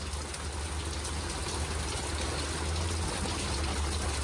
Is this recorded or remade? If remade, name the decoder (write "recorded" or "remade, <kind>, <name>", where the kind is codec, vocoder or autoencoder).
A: recorded